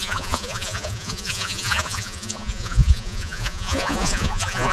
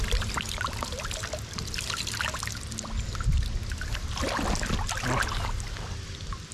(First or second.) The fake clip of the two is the first